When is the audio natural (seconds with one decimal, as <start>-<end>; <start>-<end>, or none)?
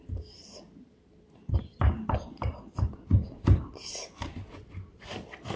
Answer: 0.0-5.6